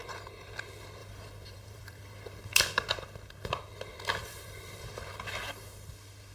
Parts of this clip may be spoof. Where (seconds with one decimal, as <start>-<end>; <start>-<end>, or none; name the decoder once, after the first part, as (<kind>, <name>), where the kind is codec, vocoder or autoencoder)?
0.0-0.6 (vocoder, BigVGAN v2); 1.0-2.9; 4.2-5.1

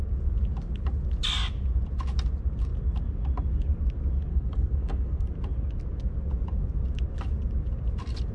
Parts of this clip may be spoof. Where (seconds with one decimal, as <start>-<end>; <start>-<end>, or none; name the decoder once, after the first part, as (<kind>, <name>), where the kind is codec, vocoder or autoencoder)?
4.3-5.3 (codec, SNAC)

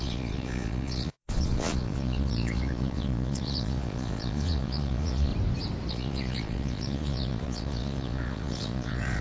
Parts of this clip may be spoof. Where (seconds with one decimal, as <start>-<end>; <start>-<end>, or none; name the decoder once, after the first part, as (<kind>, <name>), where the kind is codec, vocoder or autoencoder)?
0.0-5.3 (vocoder, Vocos); 5.9-9.2

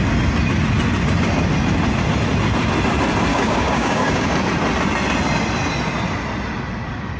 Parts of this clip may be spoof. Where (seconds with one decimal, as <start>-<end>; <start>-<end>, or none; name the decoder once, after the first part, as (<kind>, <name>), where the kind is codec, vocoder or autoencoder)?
3.3-4.3 (codec, DAC)

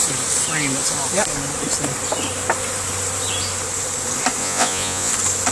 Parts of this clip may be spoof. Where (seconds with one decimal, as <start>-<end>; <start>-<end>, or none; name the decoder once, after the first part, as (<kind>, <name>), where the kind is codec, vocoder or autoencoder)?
4.4-5.1 (vocoder, Vocos)

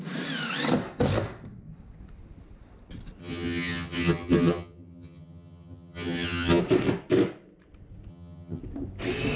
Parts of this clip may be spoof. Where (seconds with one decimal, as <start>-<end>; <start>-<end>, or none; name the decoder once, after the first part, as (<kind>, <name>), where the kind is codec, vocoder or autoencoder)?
3.2-6.6 (vocoder, HiFi-GAN); 8.1-8.6

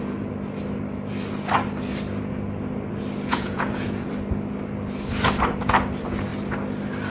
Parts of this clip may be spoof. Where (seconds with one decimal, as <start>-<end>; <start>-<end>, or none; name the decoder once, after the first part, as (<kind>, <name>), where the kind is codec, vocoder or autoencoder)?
3.3-4.1 (vocoder, Vocos)